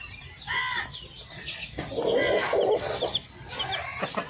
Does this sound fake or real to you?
real